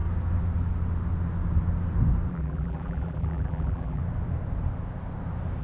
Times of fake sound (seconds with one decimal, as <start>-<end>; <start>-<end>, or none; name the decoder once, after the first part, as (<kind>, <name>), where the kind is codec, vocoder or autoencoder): 2.3-4.0 (vocoder, BigVGAN v2)